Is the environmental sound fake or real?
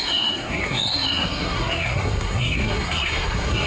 fake